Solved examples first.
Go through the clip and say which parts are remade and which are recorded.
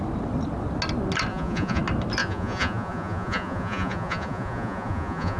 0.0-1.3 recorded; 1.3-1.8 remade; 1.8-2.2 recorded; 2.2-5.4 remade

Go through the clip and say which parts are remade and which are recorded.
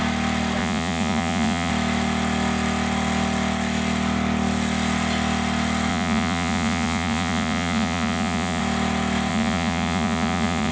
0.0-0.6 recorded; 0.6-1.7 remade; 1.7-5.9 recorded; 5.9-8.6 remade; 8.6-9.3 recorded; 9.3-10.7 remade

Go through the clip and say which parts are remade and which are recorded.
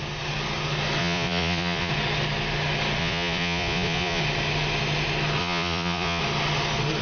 0.0-1.0 recorded; 1.0-1.9 remade; 1.9-3.0 recorded; 3.0-4.2 remade; 4.2-5.4 recorded; 5.4-6.2 remade; 6.2-7.0 recorded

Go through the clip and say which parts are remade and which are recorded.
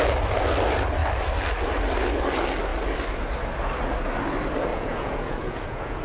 0.0-4.7 recorded; 4.7-6.0 remade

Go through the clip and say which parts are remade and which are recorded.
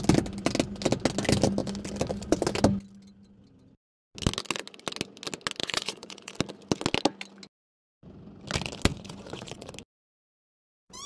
0.0-5.6 recorded; 5.6-6.3 remade; 6.3-8.9 recorded; 8.9-9.7 remade; 9.7-10.3 recorded; 10.3-11.1 remade